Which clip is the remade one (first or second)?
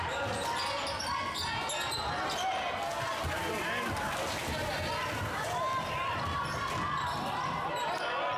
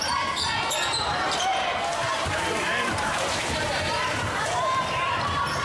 second